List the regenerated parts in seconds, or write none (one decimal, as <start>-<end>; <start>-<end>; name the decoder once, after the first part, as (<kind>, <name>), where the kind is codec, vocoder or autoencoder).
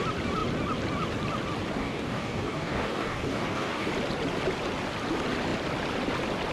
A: 1.8-3.9 (codec, DAC)